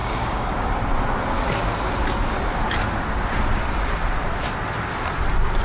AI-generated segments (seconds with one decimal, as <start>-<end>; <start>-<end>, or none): 0.0-0.7